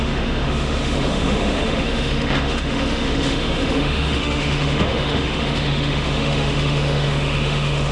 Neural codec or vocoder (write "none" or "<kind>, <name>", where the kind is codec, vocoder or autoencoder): autoencoder, DAC-VAE